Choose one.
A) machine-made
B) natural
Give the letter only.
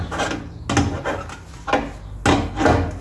B